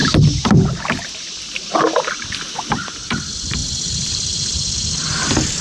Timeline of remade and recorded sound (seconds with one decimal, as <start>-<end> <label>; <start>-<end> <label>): 0.0-3.6 recorded; 3.6-5.6 remade